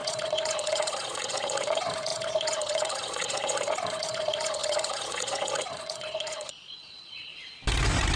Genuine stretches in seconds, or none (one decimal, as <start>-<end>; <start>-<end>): 7.3-8.2

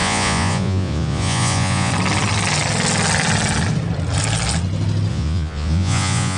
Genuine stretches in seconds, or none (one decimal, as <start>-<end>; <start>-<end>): 1.9-5.1

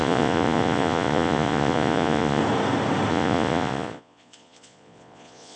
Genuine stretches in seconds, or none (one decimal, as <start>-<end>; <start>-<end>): 2.4-3.1